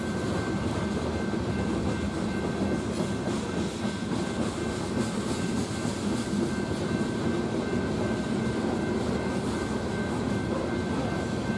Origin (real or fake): real